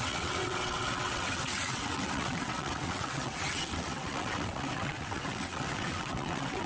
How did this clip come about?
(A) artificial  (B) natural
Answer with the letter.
A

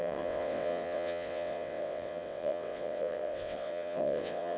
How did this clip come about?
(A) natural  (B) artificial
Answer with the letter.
B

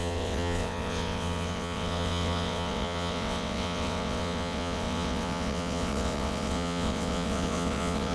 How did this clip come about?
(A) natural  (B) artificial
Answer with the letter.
B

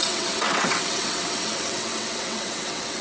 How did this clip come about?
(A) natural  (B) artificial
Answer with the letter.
B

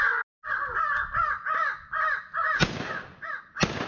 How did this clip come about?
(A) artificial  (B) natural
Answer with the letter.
B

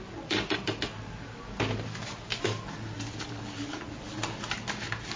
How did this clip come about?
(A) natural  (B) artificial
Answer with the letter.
A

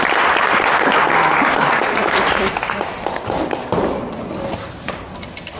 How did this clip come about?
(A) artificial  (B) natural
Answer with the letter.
B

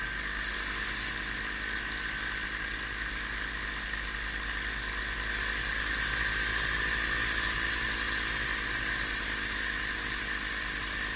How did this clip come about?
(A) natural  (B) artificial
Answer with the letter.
A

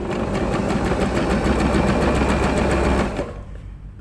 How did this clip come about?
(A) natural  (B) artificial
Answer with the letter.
A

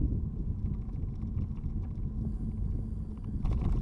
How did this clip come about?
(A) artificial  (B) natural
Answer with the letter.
B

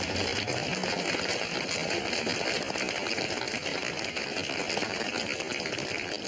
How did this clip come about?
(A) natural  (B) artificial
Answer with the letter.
A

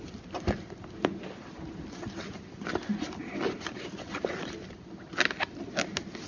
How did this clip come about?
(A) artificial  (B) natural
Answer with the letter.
B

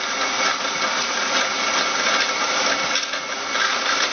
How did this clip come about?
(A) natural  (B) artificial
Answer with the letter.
A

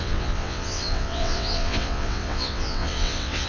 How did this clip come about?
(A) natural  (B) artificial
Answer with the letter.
B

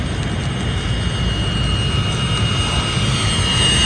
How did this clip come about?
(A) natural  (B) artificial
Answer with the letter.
A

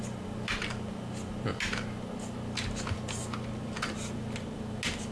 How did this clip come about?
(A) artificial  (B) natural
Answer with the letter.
B